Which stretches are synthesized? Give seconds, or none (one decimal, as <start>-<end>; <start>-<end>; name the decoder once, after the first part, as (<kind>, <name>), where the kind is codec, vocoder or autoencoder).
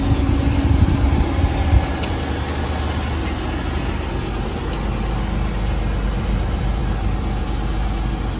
none